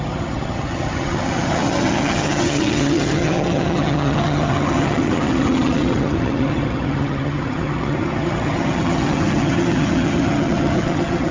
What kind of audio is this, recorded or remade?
remade